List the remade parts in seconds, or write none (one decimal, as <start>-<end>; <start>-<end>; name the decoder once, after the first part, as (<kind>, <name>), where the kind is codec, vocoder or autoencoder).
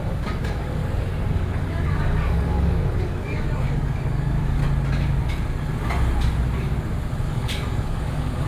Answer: 0.0-0.8 (codec, DAC); 1.3-4.6; 7.3-8.5